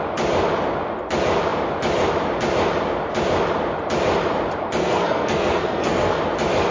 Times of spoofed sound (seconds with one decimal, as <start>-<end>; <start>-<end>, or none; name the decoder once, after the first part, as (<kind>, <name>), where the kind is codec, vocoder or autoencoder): 4.8-6.2 (codec, SNAC)

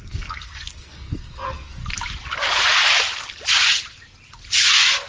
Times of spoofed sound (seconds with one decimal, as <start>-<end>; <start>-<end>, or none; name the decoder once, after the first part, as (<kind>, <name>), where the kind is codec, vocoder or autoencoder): 0.0-1.8 (codec, SNAC)